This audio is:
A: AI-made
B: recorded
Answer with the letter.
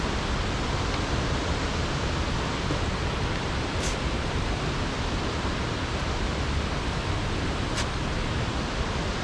B